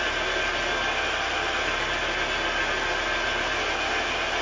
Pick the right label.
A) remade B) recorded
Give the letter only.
B